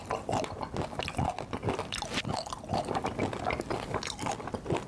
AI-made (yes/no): no